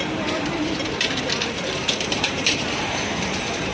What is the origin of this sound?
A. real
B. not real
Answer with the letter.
B